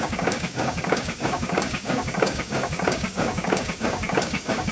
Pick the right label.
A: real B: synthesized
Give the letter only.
B